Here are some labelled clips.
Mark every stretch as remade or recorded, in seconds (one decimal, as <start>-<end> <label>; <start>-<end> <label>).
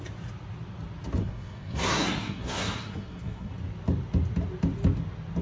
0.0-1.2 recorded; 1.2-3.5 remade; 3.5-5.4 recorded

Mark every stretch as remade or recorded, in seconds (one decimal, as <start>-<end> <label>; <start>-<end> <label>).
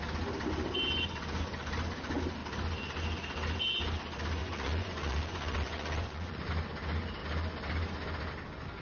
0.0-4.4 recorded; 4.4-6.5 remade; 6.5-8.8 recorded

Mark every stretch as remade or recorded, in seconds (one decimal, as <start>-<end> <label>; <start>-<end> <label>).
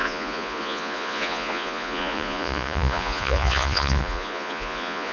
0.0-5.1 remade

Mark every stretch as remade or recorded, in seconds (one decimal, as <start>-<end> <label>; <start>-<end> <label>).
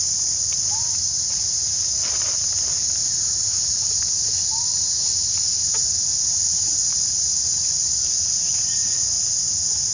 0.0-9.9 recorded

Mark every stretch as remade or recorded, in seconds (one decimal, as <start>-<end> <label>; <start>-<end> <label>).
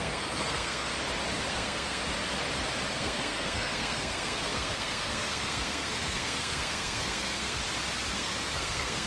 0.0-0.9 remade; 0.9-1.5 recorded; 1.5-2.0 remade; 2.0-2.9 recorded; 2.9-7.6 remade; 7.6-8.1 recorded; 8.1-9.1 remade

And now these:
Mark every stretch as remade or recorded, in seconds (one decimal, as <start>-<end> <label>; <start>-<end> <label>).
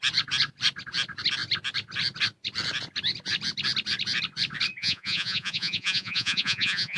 0.0-4.8 recorded; 4.8-7.0 remade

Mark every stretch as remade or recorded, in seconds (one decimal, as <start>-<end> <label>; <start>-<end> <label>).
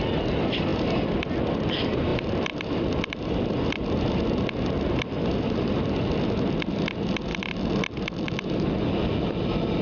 0.0-9.8 recorded